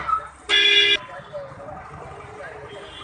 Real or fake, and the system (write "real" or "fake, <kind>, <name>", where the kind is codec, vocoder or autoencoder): real